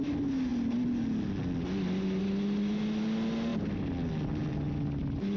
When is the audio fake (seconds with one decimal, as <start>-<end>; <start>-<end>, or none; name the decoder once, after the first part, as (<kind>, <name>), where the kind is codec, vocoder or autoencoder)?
none